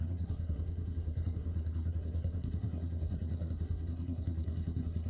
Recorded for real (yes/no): no